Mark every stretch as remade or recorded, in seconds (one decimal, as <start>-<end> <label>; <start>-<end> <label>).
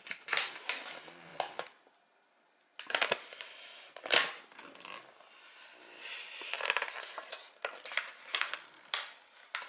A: 0.0-9.7 recorded